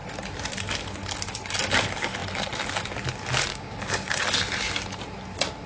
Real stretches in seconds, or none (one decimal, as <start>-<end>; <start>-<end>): 0.0-3.5; 4.2-5.7